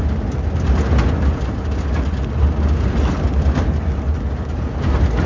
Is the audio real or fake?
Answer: real